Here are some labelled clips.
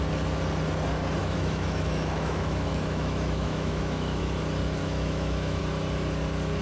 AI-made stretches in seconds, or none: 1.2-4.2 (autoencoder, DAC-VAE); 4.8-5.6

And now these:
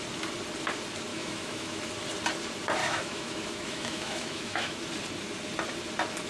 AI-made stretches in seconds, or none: 1.1-1.8 (autoencoder, DAC-VAE); 2.8-4.8